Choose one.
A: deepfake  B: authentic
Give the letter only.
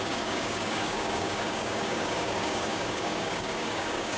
A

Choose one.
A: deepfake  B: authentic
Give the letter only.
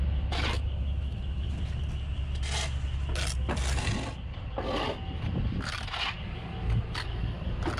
B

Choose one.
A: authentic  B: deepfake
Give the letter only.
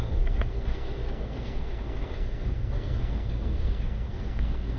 B